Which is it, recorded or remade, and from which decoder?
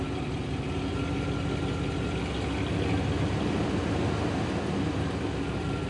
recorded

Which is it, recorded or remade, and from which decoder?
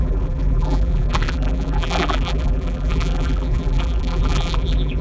remade, vocoder, BigVGAN v2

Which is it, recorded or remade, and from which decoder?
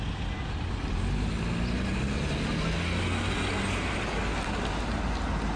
recorded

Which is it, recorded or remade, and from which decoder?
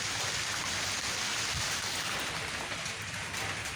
remade, vocoder, BigVGAN v2